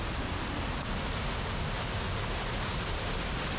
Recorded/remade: recorded